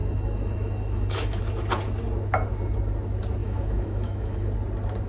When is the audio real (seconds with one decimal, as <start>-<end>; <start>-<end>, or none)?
1.4-3.4; 4.5-5.1